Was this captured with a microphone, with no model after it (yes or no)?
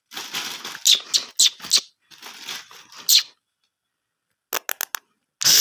yes